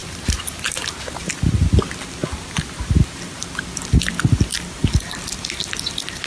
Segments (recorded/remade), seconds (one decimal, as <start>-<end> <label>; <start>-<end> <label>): 0.0-1.2 remade; 1.2-6.3 recorded

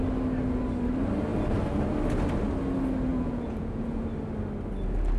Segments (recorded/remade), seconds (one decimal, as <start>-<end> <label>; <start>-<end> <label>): 0.0-3.1 recorded; 3.1-4.0 remade; 4.0-5.2 recorded

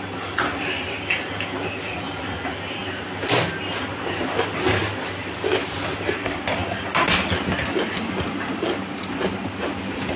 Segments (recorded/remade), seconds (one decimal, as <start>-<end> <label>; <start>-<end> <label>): 0.0-10.2 recorded

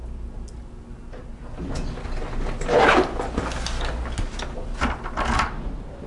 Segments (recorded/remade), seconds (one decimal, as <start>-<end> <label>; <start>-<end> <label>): 0.0-6.1 recorded

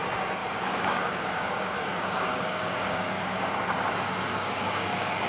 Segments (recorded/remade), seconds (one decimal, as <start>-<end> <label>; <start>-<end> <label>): 0.0-0.4 recorded; 0.4-3.6 remade; 3.6-4.3 recorded; 4.3-5.3 remade